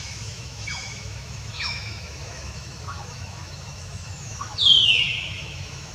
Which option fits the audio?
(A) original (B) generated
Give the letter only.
B